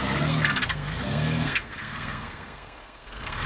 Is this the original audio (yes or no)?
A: no